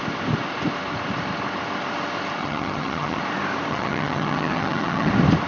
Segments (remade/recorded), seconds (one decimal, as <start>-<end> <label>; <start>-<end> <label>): 0.0-2.4 recorded; 2.4-3.2 remade; 3.2-3.7 recorded; 3.7-5.1 remade; 5.1-5.5 recorded